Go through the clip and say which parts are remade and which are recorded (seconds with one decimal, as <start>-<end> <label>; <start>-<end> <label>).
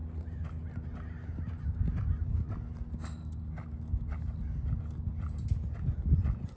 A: 0.0-6.6 recorded